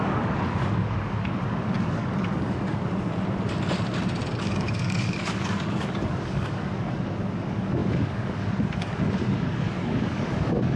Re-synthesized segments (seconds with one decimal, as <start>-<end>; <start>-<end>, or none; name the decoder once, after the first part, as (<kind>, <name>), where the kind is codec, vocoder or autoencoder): 0.0-3.1 (codec, DAC); 4.4-10.8